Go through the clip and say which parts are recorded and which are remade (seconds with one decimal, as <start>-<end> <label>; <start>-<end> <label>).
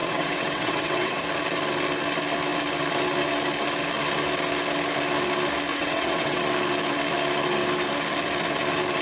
0.0-1.2 remade; 1.2-5.7 recorded; 5.7-6.4 remade; 6.4-9.0 recorded